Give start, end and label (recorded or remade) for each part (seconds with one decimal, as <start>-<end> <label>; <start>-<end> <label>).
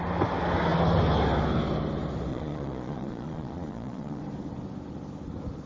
0.0-2.3 recorded; 2.3-4.2 remade; 4.2-5.7 recorded